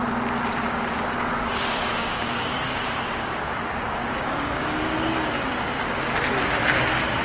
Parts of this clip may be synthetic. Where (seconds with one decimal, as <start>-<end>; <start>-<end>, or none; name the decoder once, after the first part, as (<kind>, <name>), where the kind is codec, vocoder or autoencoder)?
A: 0.5-4.8 (codec, DAC)